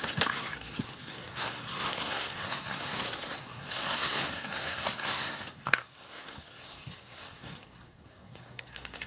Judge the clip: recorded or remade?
remade